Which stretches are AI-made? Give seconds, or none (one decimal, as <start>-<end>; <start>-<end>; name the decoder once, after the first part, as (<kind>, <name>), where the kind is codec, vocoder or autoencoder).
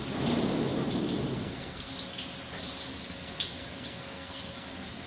1.3-1.9 (codec, SNAC); 2.9-5.1